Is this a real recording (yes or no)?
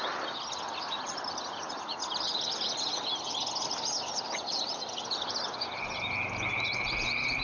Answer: yes